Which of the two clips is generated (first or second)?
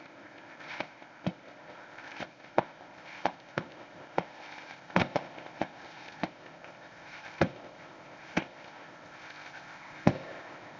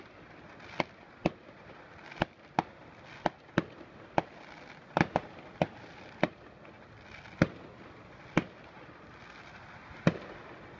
first